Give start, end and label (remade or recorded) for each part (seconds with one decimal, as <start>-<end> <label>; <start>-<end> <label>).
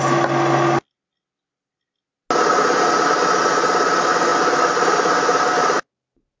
0.0-6.4 recorded